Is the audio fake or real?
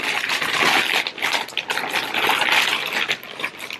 real